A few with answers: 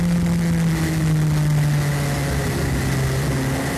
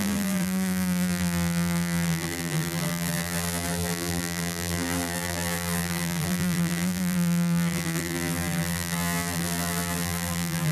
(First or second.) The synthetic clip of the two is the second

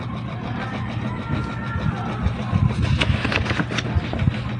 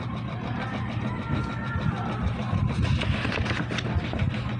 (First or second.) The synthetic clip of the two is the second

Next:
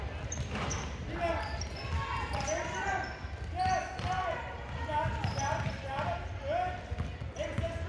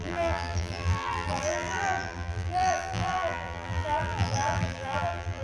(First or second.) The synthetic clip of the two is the second